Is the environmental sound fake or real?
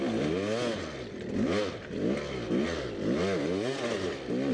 real